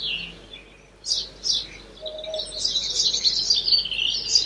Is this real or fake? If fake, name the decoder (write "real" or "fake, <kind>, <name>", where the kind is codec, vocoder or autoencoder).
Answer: real